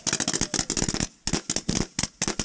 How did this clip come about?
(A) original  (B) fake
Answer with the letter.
A